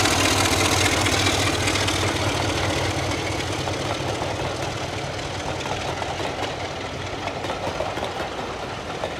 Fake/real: real